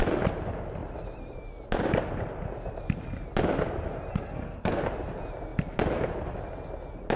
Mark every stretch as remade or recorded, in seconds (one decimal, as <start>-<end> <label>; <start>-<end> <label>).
0.0-4.1 recorded; 4.1-4.8 remade; 4.8-7.2 recorded